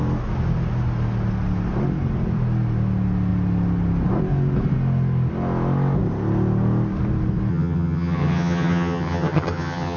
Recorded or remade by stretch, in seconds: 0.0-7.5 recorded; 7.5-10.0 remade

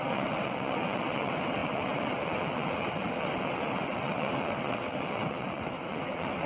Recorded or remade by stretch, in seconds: 0.0-6.5 remade